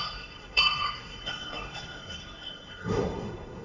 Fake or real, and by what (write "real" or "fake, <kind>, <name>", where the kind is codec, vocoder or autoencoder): fake, codec, SNAC